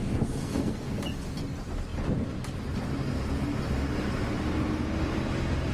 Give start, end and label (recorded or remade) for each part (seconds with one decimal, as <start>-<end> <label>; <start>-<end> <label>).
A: 0.0-1.0 remade; 1.0-5.7 recorded